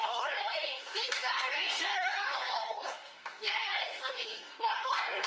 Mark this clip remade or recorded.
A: remade